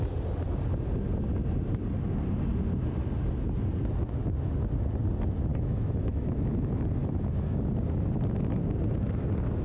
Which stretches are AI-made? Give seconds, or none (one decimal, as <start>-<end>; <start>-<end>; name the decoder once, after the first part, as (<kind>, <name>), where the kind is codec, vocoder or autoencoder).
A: 5.5-6.4 (autoencoder, DAC-VAE); 7.0-7.7